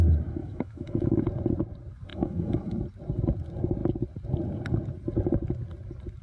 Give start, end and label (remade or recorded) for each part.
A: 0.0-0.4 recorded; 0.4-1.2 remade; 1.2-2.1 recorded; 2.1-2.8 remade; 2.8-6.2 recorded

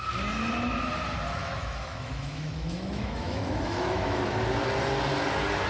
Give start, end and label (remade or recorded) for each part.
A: 0.0-1.4 recorded; 1.4-4.2 remade; 4.2-5.7 recorded

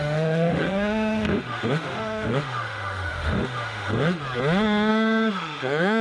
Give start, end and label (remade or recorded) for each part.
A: 0.0-4.2 remade; 4.2-4.9 recorded; 4.9-6.0 remade

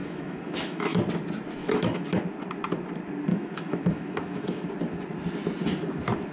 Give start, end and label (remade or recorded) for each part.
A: 0.0-1.0 remade; 1.0-1.6 recorded; 1.6-2.2 remade; 2.2-3.3 recorded; 3.3-4.7 remade; 4.7-6.3 recorded

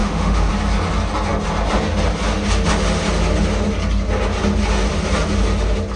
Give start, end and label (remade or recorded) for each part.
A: 0.0-0.5 remade; 0.5-6.0 recorded

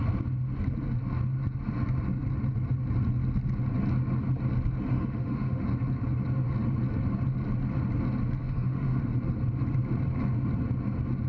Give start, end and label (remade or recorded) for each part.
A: 0.0-4.9 recorded; 4.9-5.6 remade; 5.6-8.4 recorded; 8.4-9.0 remade; 9.0-11.3 recorded

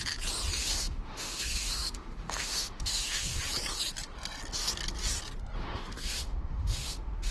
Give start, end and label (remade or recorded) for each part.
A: 0.0-0.6 recorded; 0.6-3.4 remade; 3.4-5.6 recorded; 5.6-7.3 remade

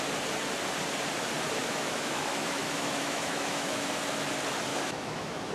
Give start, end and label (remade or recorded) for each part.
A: 0.0-1.6 recorded; 1.6-3.9 remade; 3.9-4.7 recorded; 4.7-5.5 remade